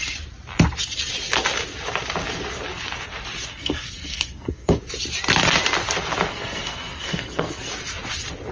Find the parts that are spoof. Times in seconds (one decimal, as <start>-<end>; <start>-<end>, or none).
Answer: 3.5-4.8; 6.3-7.7